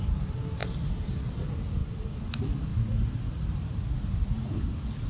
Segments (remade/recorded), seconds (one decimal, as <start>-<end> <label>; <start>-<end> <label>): 0.0-0.6 recorded; 0.6-1.2 remade; 1.2-1.8 recorded; 1.8-2.3 remade; 2.3-5.1 recorded